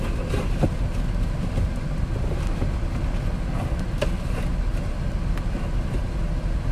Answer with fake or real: real